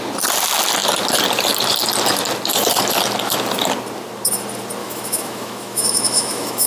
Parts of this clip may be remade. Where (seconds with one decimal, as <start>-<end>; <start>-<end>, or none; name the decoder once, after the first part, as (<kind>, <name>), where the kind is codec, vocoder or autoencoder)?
4.8-6.7 (autoencoder, DAC-VAE)

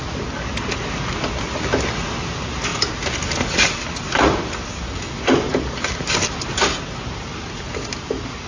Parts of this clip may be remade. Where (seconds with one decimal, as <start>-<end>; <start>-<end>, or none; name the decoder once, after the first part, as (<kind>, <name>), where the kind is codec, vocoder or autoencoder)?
none

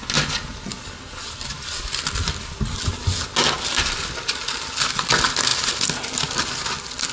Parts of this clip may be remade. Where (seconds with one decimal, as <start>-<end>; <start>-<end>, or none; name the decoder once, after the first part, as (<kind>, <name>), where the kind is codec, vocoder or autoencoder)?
none

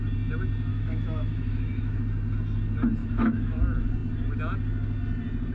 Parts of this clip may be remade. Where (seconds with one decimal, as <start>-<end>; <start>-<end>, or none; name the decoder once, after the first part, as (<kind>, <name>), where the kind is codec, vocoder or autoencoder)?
0.7-2.0 (autoencoder, DAC-VAE); 3.0-3.6